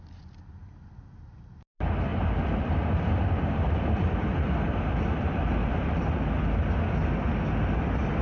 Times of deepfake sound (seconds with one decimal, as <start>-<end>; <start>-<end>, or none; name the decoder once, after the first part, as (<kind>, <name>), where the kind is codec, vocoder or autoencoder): 2.1-6.1 (vocoder, BigVGAN v2)